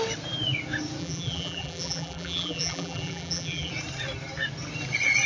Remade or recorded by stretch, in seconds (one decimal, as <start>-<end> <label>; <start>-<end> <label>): 0.0-1.0 recorded; 1.0-3.7 remade; 3.7-5.3 recorded